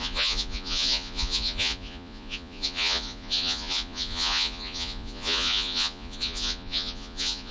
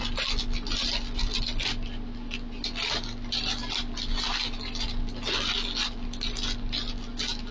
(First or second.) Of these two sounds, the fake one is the first